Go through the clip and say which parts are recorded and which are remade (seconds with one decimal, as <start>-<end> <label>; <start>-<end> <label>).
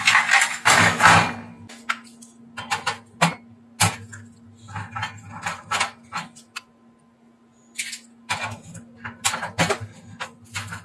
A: 0.0-0.5 recorded; 0.5-1.0 remade; 1.0-10.8 recorded